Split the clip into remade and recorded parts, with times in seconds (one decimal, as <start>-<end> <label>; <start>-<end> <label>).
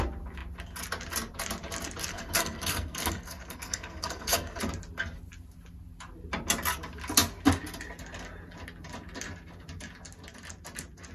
0.0-2.1 recorded; 2.1-4.6 remade; 4.6-11.1 recorded